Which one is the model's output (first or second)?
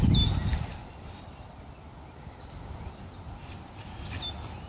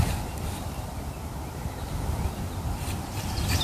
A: second